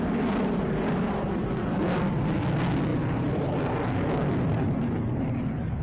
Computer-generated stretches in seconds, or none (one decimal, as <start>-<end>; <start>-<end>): none